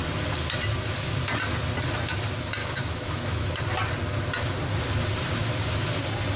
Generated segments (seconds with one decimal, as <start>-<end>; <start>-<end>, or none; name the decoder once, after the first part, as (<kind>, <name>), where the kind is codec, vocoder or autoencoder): 2.6-3.5 (autoencoder, DAC-VAE)